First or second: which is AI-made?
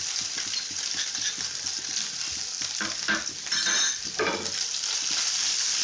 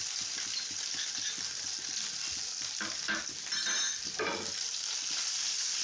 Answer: first